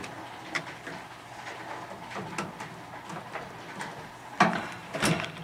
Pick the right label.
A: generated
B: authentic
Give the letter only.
B